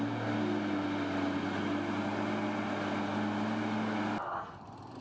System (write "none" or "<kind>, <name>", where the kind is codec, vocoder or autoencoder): none